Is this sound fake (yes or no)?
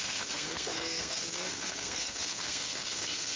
yes